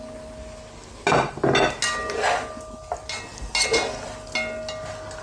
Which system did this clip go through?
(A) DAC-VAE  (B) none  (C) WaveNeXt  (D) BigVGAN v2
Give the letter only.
B